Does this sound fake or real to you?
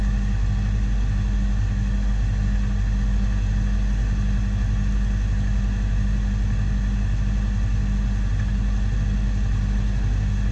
real